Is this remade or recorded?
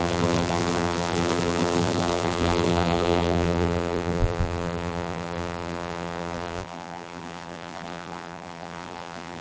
remade